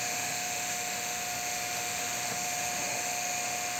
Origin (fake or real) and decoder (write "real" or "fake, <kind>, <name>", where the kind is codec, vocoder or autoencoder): fake, autoencoder, DAC-VAE